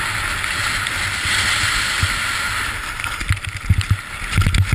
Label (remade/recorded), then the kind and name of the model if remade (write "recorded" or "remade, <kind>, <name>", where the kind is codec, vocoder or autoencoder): recorded